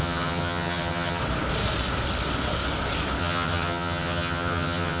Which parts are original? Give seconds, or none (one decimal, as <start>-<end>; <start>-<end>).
1.2-3.2

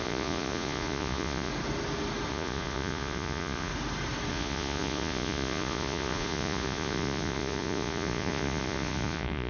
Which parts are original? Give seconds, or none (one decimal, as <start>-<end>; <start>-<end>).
1.5-2.3; 3.7-4.3

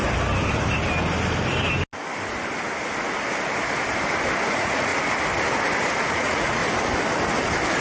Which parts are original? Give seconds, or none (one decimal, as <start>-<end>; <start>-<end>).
0.0-4.5; 4.9-6.1; 6.6-7.8

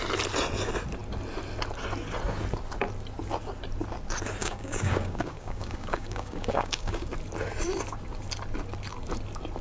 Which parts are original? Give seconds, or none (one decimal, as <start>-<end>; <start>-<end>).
0.0-4.4; 7.1-9.6